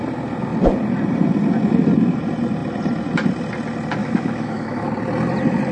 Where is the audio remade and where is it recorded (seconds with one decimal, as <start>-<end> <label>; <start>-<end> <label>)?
0.0-4.0 recorded; 4.0-4.9 remade; 4.9-5.7 recorded